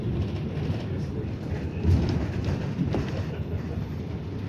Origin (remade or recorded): recorded